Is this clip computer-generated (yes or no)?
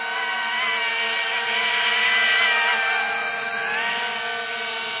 no